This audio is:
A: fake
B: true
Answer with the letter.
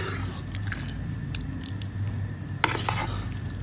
B